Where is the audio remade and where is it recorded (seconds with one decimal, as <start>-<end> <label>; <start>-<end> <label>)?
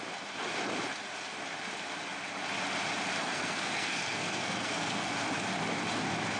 0.0-3.2 recorded; 3.2-5.1 remade; 5.1-6.4 recorded